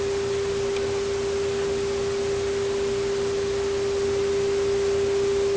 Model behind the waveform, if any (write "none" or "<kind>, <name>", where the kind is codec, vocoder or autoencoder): none